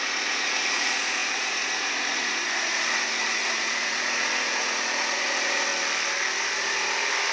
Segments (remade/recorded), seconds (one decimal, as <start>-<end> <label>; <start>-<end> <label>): 0.0-5.7 remade; 5.7-7.3 recorded